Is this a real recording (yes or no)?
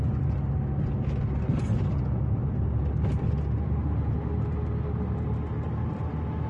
yes